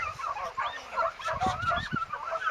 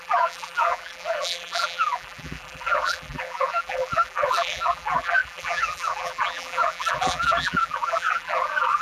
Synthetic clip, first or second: second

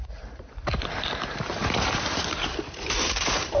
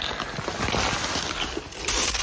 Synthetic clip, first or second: first